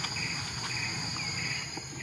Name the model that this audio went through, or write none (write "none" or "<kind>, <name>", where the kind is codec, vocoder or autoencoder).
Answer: none